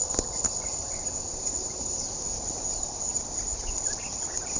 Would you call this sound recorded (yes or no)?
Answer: yes